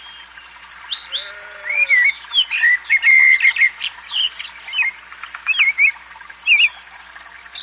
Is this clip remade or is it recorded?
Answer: recorded